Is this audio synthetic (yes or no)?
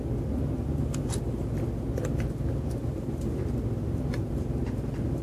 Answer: no